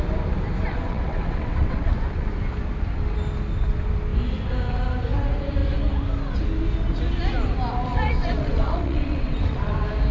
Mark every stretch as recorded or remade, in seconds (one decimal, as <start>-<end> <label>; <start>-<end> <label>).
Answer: 0.0-0.6 recorded; 0.6-2.3 remade; 2.3-7.9 recorded; 7.9-9.7 remade; 9.7-10.1 recorded